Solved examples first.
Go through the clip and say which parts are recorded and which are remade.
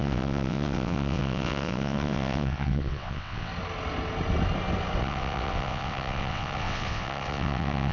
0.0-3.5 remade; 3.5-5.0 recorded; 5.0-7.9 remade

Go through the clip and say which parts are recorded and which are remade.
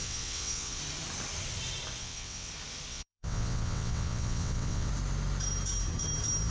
0.0-0.8 remade; 0.8-2.0 recorded; 2.0-2.5 remade; 2.5-2.9 recorded; 2.9-4.9 remade; 4.9-6.5 recorded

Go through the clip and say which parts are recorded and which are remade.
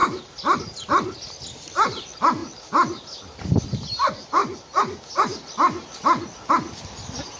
0.0-7.4 recorded